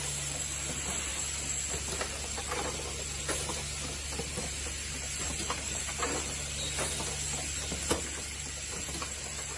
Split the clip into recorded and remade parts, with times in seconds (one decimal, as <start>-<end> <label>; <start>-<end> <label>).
0.0-9.6 recorded